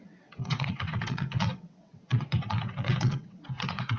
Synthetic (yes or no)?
yes